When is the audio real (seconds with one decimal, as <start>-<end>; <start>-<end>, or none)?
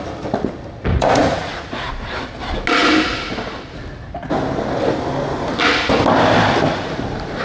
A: 0.0-0.9; 1.9-7.4